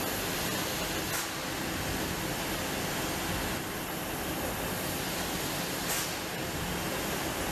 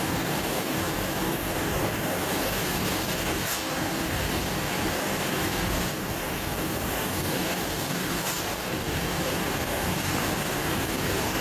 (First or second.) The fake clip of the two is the second